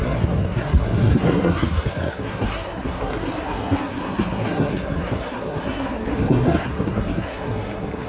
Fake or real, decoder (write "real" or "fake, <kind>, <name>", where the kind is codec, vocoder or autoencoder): fake, codec, SNAC